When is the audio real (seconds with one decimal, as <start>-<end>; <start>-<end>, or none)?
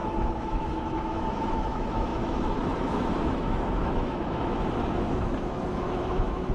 none